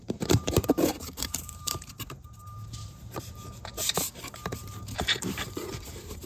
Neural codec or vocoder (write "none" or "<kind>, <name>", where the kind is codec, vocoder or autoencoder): vocoder, BigVGAN v2